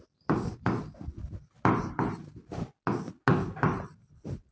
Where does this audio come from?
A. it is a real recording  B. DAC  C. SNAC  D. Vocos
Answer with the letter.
A